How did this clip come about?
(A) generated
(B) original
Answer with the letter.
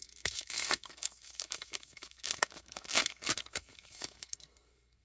A